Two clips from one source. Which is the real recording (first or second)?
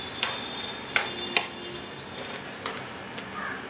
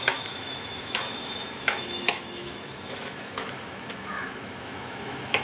first